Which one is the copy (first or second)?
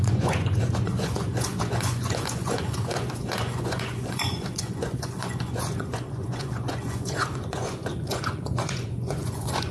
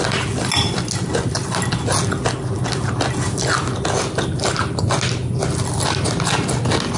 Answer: first